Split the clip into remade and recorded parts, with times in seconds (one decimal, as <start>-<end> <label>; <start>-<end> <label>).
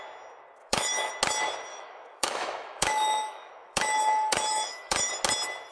0.0-0.6 recorded; 0.6-1.1 remade; 1.1-1.7 recorded; 1.7-5.1 remade; 5.1-5.7 recorded